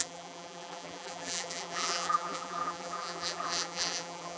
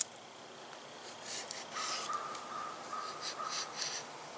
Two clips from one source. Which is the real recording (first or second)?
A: second